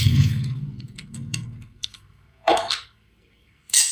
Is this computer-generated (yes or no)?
yes